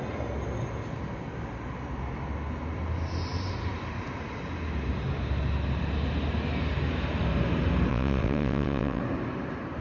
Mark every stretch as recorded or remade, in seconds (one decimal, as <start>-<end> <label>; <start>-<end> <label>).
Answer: 0.0-7.9 recorded; 7.9-9.0 remade; 9.0-9.8 recorded